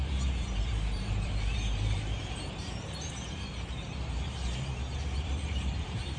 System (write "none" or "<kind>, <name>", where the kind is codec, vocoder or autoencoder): vocoder, BigVGAN v2